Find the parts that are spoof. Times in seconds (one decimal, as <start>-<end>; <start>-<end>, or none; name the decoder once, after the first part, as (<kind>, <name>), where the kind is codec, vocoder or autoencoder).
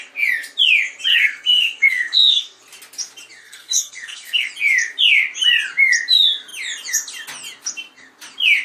1.1-2.6 (codec, SNAC); 3.4-4.5